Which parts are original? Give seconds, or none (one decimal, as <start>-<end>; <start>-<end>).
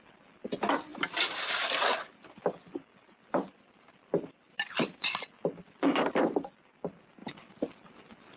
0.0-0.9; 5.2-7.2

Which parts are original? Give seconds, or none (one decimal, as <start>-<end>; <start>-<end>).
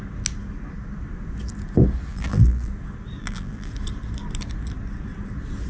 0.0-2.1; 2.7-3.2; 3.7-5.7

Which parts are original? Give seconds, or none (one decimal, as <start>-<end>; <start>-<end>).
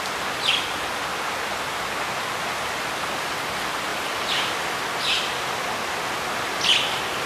0.0-3.9; 4.6-7.3